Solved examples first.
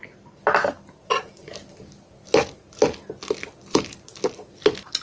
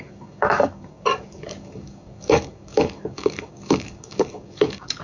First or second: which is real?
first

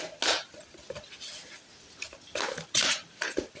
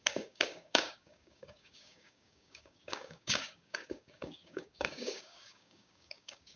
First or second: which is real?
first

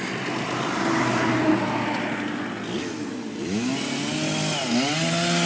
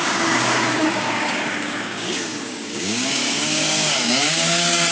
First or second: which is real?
first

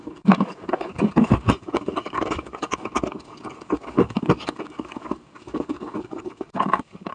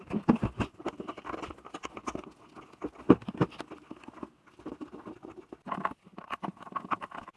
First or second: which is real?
second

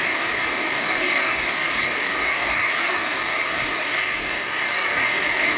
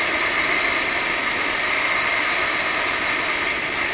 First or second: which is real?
second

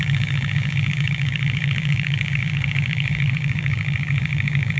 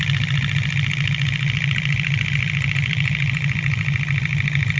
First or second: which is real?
second